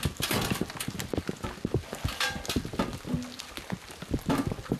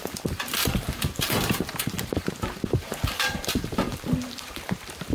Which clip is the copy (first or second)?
second